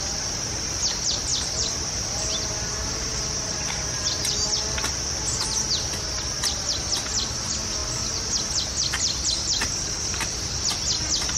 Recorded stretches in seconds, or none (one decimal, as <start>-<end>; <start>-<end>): 0.0-1.3; 2.4-11.4